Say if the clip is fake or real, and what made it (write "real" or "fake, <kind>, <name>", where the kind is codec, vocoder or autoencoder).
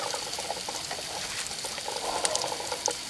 real